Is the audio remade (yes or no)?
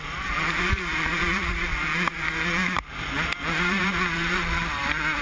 yes